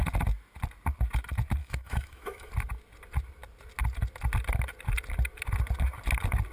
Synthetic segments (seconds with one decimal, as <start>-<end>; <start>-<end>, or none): 1.6-2.5